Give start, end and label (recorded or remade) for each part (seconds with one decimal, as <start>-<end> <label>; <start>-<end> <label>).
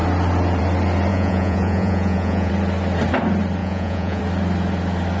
0.0-1.1 recorded; 1.1-2.5 remade; 2.5-3.6 recorded; 3.6-4.2 remade; 4.2-5.2 recorded